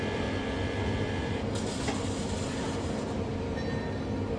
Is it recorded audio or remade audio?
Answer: recorded